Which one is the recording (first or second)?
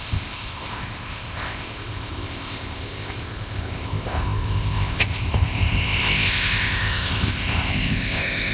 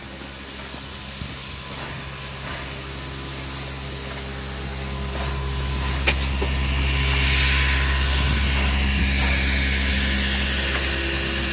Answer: second